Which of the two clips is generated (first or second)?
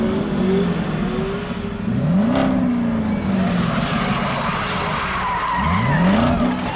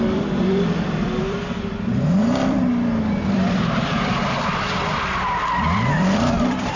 second